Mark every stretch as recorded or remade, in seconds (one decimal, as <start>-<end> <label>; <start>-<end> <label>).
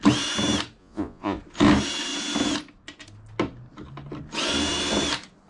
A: 0.0-0.8 recorded; 0.8-1.4 remade; 1.4-5.5 recorded